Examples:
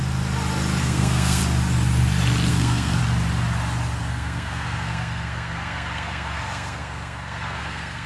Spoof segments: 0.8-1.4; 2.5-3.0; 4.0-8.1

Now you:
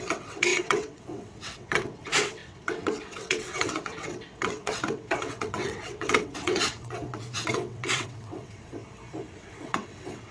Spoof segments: 0.0-8.8; 9.4-10.3

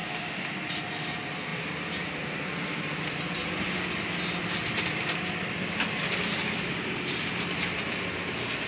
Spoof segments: 1.5-2.5; 4.4-5.0

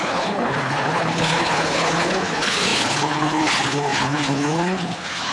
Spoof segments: 0.0-5.3

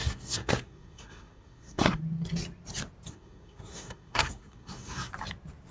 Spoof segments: 0.0-2.0; 3.1-5.1